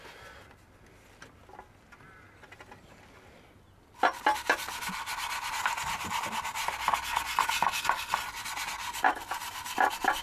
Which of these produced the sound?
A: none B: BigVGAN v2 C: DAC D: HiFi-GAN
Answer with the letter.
A